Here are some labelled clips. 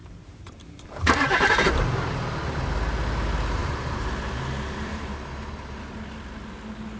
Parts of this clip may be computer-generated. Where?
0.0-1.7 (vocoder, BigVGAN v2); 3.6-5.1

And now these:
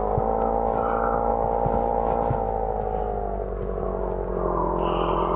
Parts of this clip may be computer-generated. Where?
none